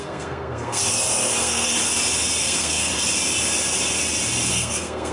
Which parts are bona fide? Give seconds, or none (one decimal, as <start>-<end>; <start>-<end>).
0.8-1.4; 1.8-2.4; 2.9-4.5